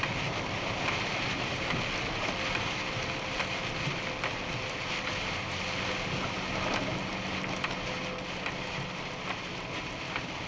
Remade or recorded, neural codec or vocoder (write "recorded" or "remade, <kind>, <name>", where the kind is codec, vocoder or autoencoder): recorded